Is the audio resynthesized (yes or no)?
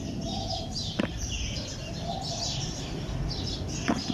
yes